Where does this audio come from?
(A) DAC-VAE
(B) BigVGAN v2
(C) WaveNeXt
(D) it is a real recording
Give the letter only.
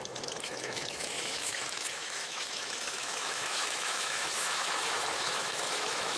A